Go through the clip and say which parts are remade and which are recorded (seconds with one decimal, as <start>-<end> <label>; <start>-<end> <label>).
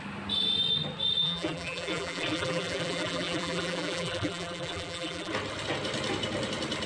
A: 0.0-1.2 recorded; 1.2-5.3 remade; 5.3-6.9 recorded